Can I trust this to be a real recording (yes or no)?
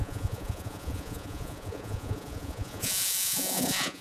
no